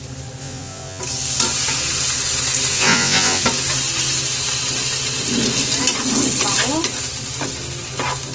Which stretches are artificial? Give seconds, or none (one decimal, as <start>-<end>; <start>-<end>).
0.4-1.0; 2.7-3.4